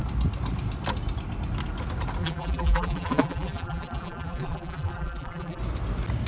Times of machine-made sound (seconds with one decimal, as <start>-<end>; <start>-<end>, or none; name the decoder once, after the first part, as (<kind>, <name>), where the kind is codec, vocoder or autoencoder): 2.2-5.6 (vocoder, BigVGAN v2)